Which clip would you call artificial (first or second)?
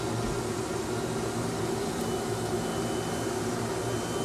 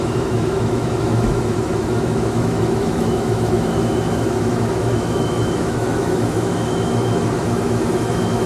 second